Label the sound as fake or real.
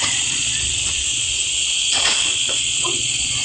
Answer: fake